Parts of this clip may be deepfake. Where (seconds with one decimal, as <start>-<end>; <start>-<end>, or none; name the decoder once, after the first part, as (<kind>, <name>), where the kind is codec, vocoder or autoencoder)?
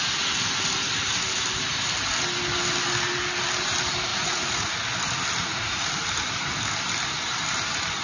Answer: 4.1-4.8 (vocoder, Vocos); 5.4-5.9